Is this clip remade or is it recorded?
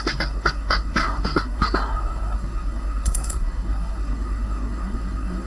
remade